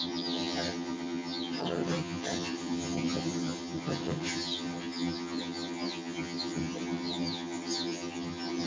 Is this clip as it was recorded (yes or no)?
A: no